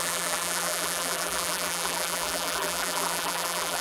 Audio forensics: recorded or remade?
remade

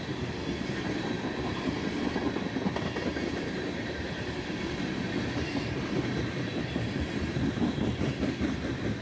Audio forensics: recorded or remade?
remade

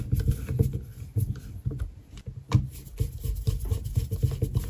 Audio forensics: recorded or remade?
recorded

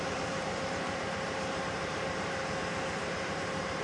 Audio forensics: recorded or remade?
remade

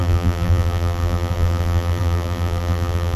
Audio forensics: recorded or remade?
remade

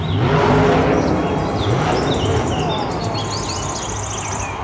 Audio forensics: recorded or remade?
recorded